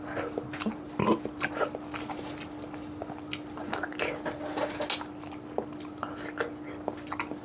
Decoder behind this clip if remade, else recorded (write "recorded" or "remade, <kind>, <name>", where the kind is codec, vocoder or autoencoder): recorded